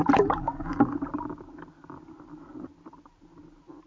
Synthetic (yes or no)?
no